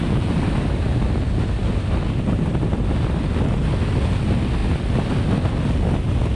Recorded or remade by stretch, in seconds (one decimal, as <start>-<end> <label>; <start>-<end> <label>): 0.0-6.4 recorded